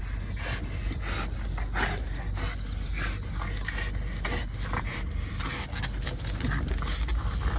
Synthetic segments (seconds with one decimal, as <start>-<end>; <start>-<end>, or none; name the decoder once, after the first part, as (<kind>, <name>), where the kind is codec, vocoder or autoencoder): none